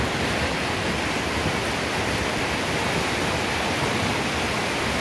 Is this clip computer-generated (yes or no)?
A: no